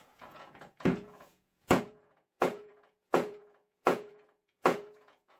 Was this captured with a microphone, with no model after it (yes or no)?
no